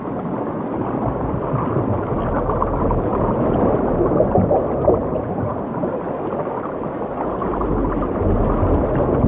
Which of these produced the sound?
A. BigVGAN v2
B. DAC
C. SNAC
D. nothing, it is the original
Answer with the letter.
D